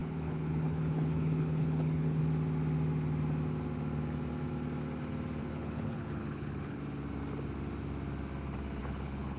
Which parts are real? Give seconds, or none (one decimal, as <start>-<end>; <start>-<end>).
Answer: 2.2-5.4; 6.8-8.8